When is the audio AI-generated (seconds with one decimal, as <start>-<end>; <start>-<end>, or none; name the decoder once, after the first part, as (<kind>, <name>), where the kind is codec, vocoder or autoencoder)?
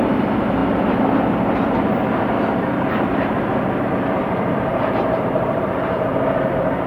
4.7-5.6 (vocoder, BigVGAN v2)